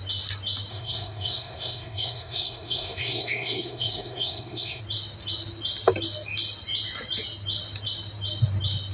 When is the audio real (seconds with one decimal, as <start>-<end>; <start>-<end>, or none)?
0.0-0.7; 4.8-8.9